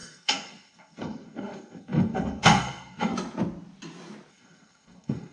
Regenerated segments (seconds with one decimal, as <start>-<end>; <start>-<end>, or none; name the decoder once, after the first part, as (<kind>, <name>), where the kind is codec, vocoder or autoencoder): 0.0-3.1 (codec, SNAC); 4.3-5.3